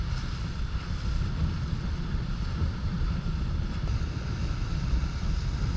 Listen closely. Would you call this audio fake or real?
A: real